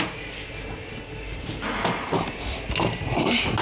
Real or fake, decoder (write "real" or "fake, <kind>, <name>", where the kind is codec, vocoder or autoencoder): real